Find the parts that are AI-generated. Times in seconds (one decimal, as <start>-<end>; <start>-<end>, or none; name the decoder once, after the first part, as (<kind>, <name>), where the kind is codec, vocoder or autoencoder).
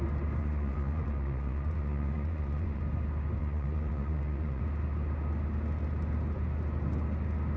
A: 0.4-2.8 (vocoder, Vocos); 3.4-4.6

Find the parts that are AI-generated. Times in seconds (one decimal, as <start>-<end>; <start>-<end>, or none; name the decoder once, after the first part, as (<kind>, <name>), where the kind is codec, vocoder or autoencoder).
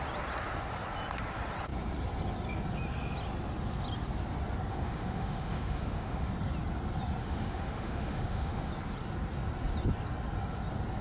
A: 4.7-6.3 (autoencoder, DAC-VAE); 7.2-8.7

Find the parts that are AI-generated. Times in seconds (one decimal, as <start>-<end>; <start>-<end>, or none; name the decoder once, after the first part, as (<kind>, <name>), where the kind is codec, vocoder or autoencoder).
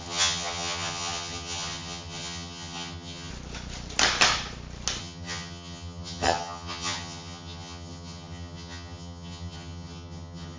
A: 0.0-3.3 (vocoder, HiFi-GAN); 5.0-10.6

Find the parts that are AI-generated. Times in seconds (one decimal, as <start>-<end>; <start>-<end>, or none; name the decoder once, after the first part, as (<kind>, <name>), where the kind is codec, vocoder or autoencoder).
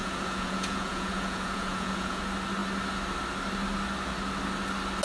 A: 0.0-2.2 (vocoder, Vocos)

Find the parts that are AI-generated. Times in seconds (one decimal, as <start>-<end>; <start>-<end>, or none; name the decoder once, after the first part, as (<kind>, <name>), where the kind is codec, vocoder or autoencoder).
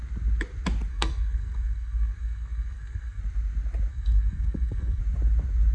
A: 0.9-3.2 (codec, SNAC); 3.9-5.0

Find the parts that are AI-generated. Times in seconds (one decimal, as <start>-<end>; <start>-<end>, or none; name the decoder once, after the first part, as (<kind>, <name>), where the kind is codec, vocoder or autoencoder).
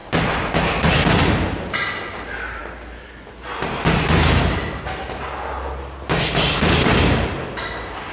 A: none